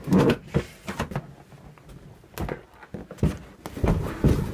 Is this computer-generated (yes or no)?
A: no